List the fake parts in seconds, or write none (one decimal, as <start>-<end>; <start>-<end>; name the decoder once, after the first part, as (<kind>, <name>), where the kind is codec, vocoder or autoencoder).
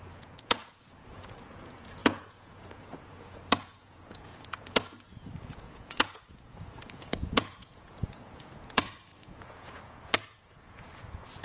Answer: 0.0-11.4 (vocoder, Vocos)